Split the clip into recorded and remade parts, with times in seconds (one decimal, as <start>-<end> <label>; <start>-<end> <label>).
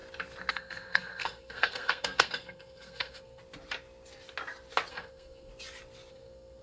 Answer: 0.0-0.5 recorded; 0.5-3.4 remade; 3.4-4.9 recorded; 4.9-5.5 remade; 5.5-6.1 recorded; 6.1-6.6 remade